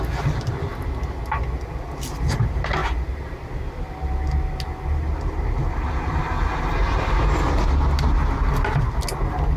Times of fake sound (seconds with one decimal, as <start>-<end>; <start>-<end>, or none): none